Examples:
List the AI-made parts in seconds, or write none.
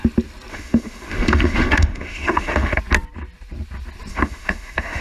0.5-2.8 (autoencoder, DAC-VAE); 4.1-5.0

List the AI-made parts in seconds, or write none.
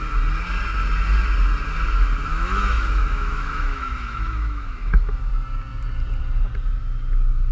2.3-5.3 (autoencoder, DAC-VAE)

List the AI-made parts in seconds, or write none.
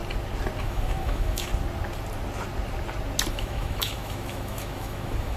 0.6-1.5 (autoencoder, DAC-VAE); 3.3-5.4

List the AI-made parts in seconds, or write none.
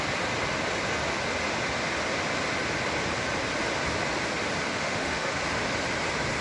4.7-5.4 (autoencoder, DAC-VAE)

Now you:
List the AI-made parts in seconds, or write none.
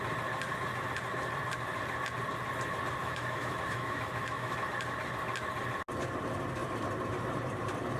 3.0-4.7 (autoencoder, DAC-VAE)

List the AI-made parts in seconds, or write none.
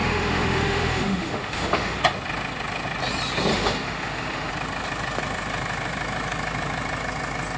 0.0-2.0 (autoencoder, DAC-VAE); 3.5-4.5